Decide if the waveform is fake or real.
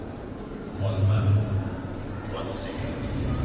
fake